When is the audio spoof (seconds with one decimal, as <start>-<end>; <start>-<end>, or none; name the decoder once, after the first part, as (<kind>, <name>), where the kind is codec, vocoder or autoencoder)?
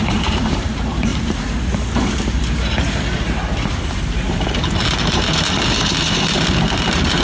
0.0-7.2 (vocoder, BigVGAN v2)